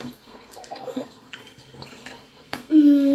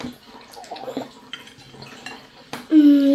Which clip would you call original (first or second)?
second